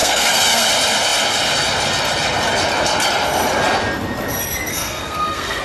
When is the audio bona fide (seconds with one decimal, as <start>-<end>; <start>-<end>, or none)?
0.7-4.7